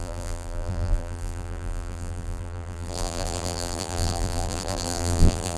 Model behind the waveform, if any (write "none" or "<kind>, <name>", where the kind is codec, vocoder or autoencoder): vocoder, BigVGAN v2